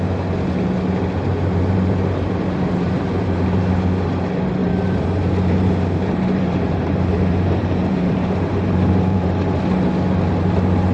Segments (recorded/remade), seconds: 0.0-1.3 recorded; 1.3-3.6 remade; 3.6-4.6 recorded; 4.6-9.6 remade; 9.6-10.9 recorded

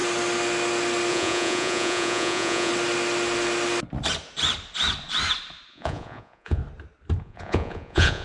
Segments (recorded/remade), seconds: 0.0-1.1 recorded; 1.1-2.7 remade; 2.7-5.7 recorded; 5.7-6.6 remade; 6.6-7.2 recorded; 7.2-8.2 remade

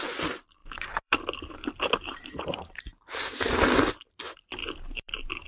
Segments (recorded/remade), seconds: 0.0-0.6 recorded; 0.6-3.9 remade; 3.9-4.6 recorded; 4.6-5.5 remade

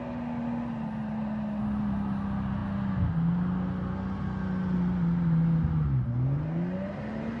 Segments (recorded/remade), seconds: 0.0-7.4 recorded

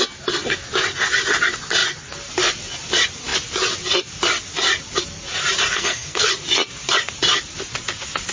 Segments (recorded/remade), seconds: 0.0-5.7 recorded; 5.7-6.3 remade; 6.3-8.3 recorded

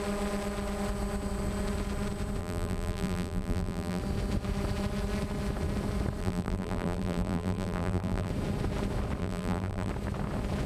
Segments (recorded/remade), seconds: 0.0-2.4 recorded; 2.4-4.0 remade; 4.0-6.2 recorded; 6.2-8.3 remade; 8.3-9.2 recorded; 9.2-9.9 remade; 9.9-10.7 recorded

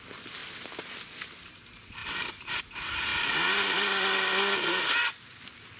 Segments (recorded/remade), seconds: 0.0-0.4 recorded; 0.4-1.5 remade; 1.5-2.0 recorded; 2.0-2.6 remade; 2.6-3.1 recorded; 3.1-4.8 remade; 4.8-5.8 recorded

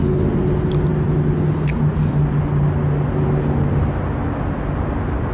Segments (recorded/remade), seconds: 0.0-5.3 recorded